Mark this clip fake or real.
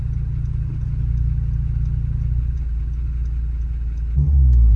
real